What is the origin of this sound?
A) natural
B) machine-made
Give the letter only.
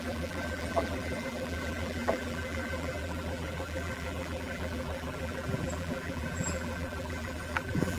B